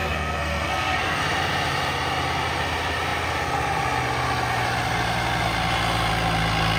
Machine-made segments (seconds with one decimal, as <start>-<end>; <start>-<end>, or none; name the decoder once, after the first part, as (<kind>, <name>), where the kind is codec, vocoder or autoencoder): 0.0-1.2 (codec, SNAC)